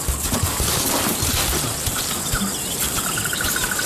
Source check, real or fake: real